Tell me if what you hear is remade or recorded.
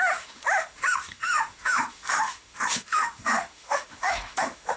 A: remade